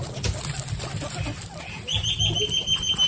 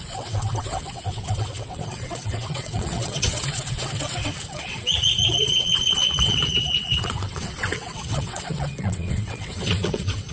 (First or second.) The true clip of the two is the first